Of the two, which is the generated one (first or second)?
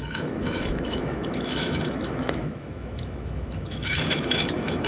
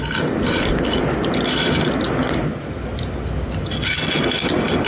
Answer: first